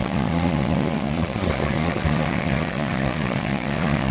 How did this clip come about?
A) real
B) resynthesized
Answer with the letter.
B